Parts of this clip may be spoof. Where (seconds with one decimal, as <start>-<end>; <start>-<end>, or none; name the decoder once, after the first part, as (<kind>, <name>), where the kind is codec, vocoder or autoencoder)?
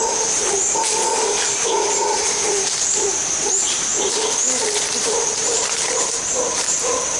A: 0.0-0.4 (vocoder, BigVGAN v2); 1.6-3.9; 5.1-7.2